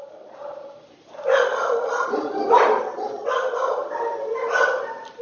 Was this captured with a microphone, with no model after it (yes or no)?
no